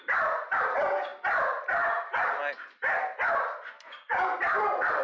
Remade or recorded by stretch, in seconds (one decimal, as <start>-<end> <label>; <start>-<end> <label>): 0.0-1.1 remade; 1.1-2.7 recorded; 2.7-5.0 remade